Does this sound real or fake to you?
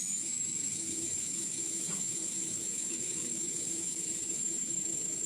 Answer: fake